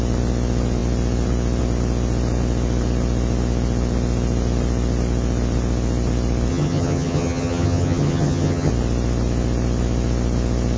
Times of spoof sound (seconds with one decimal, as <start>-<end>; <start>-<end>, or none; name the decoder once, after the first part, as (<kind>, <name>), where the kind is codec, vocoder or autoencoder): 6.5-8.7 (vocoder, HiFi-GAN)